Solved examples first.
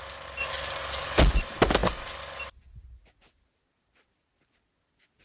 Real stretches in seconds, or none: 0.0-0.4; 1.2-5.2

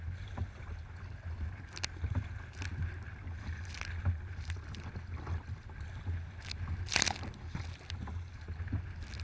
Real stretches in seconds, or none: 0.0-9.2

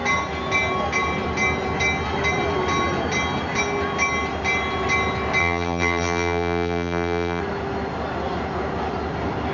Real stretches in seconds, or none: 0.0-5.4; 7.4-9.5

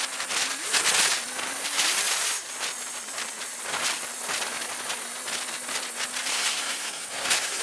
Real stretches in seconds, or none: 0.0-6.3